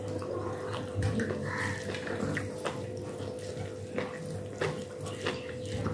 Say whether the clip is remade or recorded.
recorded